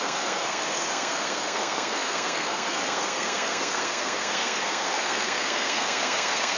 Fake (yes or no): yes